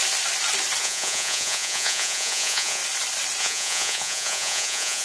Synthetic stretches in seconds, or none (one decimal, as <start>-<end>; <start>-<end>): 0.8-2.8; 3.4-5.0